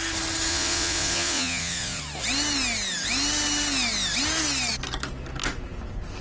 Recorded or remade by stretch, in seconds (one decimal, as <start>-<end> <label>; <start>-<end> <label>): 0.0-0.5 recorded; 0.5-2.0 remade; 2.0-6.2 recorded